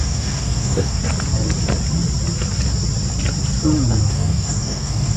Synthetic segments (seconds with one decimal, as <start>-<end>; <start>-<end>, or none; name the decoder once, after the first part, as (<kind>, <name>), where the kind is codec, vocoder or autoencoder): 0.0-1.0 (codec, DAC); 4.1-5.2